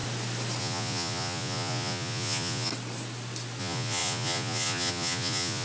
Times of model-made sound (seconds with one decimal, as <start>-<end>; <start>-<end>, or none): 0.6-2.7; 3.6-5.6